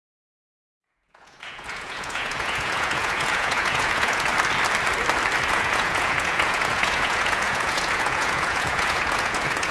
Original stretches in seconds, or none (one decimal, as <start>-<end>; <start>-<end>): 4.3-5.5